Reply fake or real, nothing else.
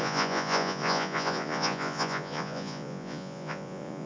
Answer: fake